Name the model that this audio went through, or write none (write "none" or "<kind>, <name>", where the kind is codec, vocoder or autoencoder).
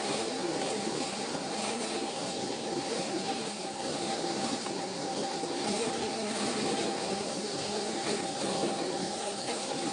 codec, SNAC